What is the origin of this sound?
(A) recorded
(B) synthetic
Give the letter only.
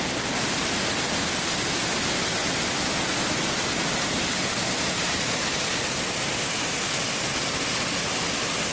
A